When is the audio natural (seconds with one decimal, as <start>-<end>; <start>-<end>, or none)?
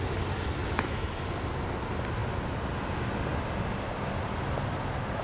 0.0-0.6; 1.2-5.2